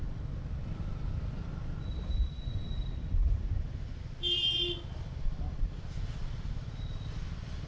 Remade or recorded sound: recorded